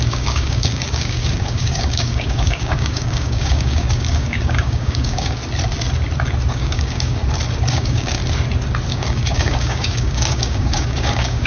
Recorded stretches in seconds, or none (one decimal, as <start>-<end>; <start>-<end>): 5.4-6.5; 7.2-7.7; 8.2-8.9